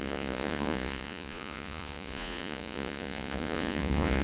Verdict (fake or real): fake